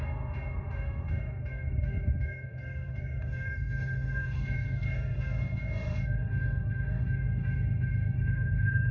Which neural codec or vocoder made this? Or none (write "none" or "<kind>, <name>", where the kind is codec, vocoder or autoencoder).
autoencoder, DAC-VAE